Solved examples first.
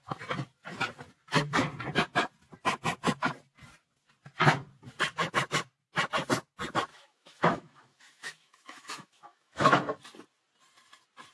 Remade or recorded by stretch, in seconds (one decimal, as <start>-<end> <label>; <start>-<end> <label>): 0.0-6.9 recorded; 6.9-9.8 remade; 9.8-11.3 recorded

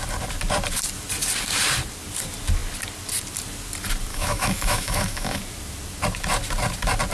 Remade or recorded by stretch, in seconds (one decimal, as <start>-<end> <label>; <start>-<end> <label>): 0.0-4.1 recorded; 4.1-5.4 remade; 5.4-7.1 recorded

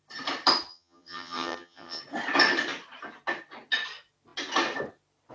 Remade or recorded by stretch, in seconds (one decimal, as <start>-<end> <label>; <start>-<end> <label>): 0.0-0.7 recorded; 0.7-2.0 remade; 2.0-5.3 recorded

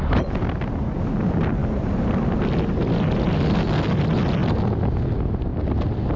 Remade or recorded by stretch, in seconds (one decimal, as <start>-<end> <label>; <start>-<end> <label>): 0.0-6.2 recorded

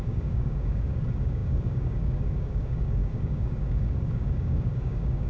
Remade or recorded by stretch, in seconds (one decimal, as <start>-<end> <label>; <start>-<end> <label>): 0.0-5.3 remade

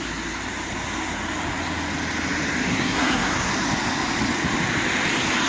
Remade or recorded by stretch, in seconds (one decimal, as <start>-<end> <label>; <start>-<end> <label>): 0.0-2.7 recorded; 2.7-3.5 remade; 3.5-5.5 recorded

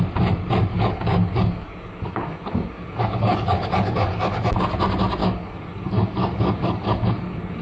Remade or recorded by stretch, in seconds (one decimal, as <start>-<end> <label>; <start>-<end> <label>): 0.0-0.7 recorded; 0.7-4.5 remade; 4.5-5.2 recorded; 5.2-7.6 remade

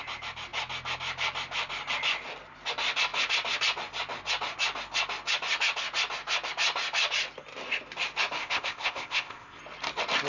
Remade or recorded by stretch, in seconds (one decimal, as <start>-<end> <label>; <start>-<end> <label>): 0.0-8.4 recorded; 8.4-9.6 remade; 9.6-10.3 recorded